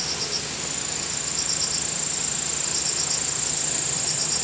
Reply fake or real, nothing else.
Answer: real